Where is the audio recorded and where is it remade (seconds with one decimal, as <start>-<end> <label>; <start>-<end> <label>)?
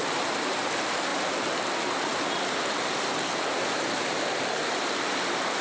0.0-5.6 recorded